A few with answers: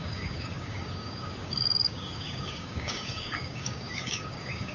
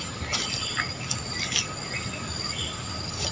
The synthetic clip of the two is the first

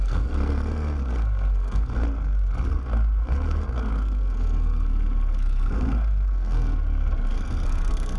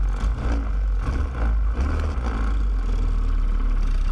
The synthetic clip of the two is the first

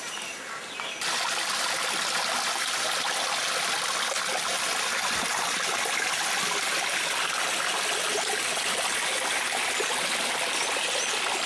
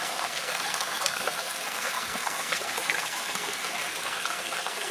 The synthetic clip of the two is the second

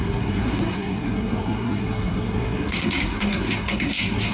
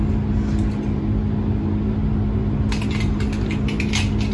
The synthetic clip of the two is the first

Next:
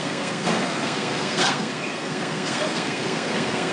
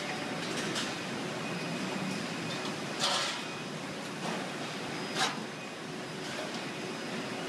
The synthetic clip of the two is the first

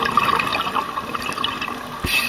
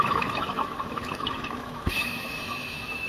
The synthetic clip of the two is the second